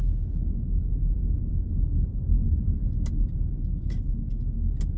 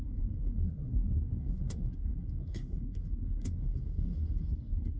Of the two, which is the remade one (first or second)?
second